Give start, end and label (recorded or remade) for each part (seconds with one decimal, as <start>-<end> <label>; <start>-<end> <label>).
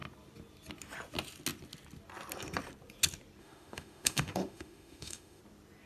0.0-3.4 recorded; 3.4-5.4 remade; 5.4-5.9 recorded